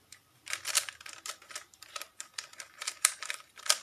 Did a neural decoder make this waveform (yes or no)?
yes